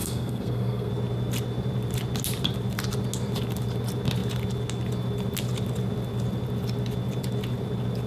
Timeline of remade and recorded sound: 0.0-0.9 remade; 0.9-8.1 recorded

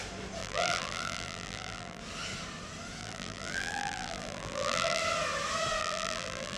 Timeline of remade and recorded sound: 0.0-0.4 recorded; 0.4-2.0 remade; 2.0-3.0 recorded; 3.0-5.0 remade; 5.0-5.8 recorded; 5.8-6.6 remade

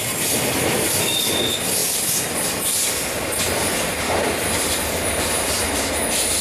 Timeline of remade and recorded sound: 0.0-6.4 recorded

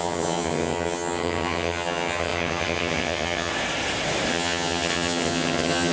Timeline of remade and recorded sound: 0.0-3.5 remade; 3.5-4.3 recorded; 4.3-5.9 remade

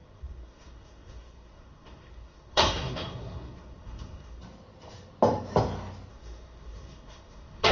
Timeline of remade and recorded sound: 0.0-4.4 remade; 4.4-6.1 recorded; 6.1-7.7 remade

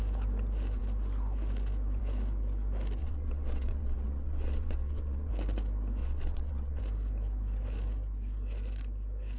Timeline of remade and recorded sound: 0.0-3.0 recorded; 3.0-5.3 remade; 5.3-6.0 recorded; 6.0-6.8 remade; 6.8-9.4 recorded